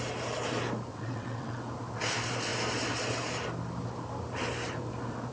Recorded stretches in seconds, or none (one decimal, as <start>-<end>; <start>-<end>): 0.0-0.9; 1.6-5.3